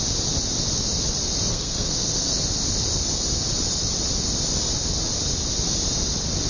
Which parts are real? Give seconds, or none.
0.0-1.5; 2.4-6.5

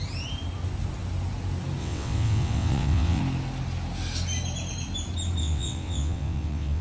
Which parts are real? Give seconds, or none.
0.0-1.8; 3.2-5.4